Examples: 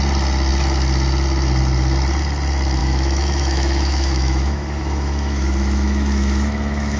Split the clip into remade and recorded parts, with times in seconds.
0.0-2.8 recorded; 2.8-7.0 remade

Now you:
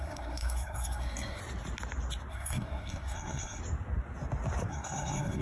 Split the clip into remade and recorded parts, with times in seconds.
0.0-1.4 remade; 1.4-2.3 recorded; 2.3-3.6 remade; 3.6-4.7 recorded; 4.7-5.4 remade

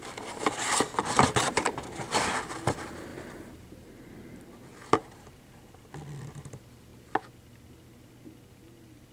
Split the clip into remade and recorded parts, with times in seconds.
0.0-1.0 recorded; 1.0-1.6 remade; 1.6-3.1 recorded; 3.1-3.9 remade; 3.9-4.7 recorded; 4.7-5.5 remade; 5.5-9.1 recorded